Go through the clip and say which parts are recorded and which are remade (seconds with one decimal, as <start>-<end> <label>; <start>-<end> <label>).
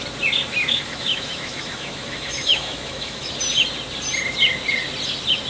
0.0-0.6 recorded; 0.6-3.3 remade; 3.3-5.5 recorded